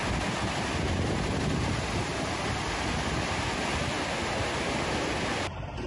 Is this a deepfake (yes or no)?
no